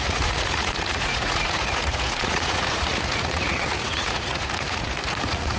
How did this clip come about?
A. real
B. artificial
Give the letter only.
B